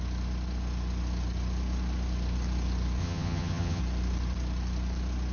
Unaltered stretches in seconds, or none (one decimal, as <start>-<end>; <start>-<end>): 0.0-3.0; 3.8-5.3